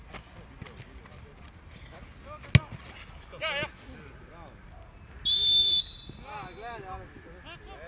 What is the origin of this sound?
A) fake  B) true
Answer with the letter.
B